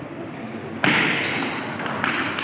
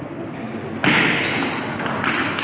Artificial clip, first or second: first